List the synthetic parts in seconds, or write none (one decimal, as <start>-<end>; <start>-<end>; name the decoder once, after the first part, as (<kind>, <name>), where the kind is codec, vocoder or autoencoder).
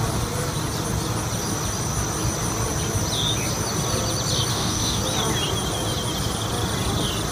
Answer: 4.5-5.0 (codec, DAC)